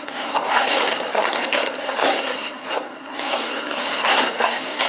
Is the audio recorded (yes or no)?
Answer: no